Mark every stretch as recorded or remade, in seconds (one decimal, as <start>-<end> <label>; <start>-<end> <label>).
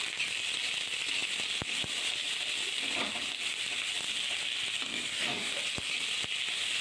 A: 0.0-4.9 recorded; 4.9-5.5 remade; 5.5-6.8 recorded